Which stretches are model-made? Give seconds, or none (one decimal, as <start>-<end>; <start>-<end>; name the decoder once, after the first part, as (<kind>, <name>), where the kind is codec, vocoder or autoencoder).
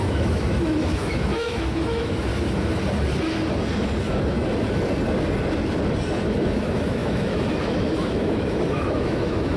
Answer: 0.0-2.3 (autoencoder, DAC-VAE); 6.3-9.6